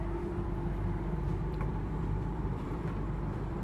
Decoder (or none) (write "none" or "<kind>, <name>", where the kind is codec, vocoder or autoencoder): vocoder, BigVGAN v2